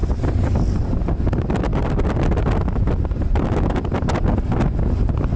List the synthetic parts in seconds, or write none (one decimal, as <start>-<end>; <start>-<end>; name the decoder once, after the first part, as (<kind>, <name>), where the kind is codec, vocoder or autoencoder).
none